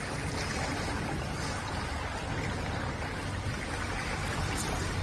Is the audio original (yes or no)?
yes